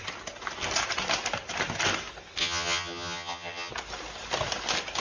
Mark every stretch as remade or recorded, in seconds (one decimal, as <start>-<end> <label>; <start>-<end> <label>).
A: 0.0-2.4 recorded; 2.4-3.7 remade; 3.7-5.0 recorded